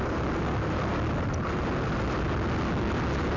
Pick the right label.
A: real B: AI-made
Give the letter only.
A